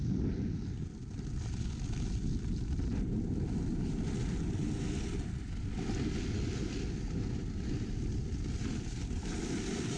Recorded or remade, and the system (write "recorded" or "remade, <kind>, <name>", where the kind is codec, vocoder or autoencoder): recorded